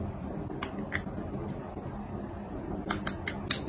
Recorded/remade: recorded